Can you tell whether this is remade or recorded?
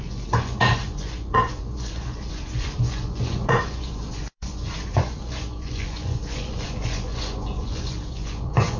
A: remade